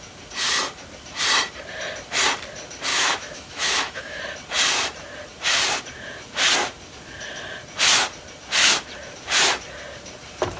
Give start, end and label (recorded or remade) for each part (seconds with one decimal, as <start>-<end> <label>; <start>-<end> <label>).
0.0-2.9 recorded; 2.9-4.2 remade; 4.2-10.6 recorded